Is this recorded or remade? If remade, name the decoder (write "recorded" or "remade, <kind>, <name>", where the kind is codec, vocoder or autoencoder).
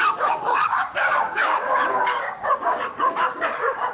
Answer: remade, codec, DAC